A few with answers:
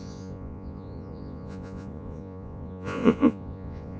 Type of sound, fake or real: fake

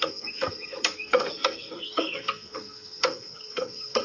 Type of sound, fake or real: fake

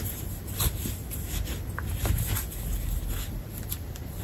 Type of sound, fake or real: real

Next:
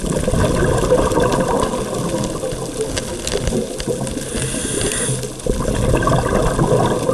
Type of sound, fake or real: real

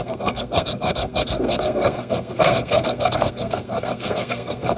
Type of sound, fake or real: fake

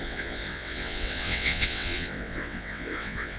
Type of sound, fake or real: fake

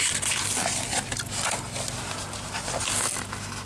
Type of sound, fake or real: real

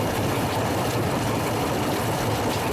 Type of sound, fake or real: real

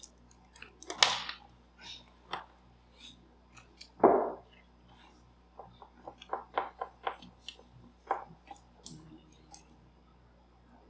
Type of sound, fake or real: real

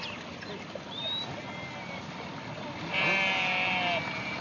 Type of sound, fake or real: real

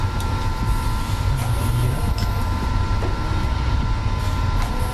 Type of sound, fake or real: fake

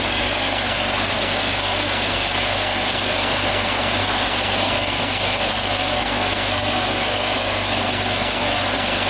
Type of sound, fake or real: fake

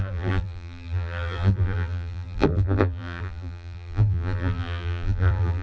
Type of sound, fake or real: fake